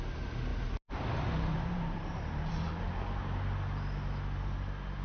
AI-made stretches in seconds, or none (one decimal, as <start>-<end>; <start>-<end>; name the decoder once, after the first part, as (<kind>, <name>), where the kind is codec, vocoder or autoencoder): 0.5-2.7 (vocoder, BigVGAN v2)